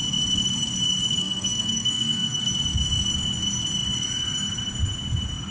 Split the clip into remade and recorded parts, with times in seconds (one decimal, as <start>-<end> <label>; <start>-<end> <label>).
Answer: 0.0-1.2 recorded; 1.2-2.4 remade; 2.4-5.5 recorded